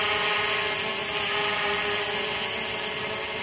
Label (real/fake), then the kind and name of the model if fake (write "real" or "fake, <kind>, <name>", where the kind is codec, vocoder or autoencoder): real